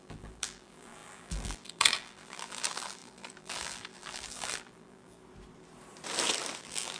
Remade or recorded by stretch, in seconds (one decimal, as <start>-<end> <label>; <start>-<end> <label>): 0.0-5.2 remade; 5.2-6.6 recorded; 6.6-7.0 remade